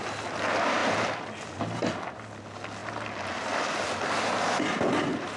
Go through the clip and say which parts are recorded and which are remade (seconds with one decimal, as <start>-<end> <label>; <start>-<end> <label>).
0.0-5.4 recorded